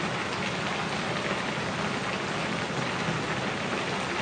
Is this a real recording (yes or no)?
yes